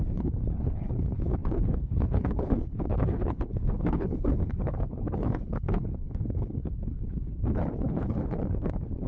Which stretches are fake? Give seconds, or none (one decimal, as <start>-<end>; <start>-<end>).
0.0-9.1